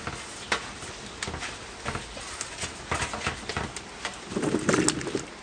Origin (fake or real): real